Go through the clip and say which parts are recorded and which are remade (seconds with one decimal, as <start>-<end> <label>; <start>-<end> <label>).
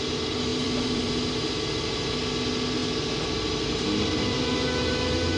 0.0-0.5 recorded; 0.5-1.3 remade; 1.3-5.4 recorded